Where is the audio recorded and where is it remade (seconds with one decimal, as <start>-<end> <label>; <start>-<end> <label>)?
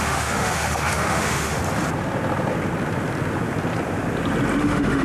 0.0-1.6 remade; 1.6-4.6 recorded; 4.6-5.0 remade